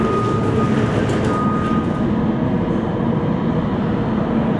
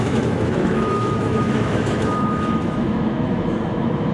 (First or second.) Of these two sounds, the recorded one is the first